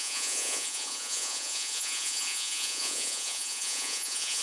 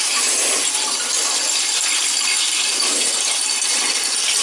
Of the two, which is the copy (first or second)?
first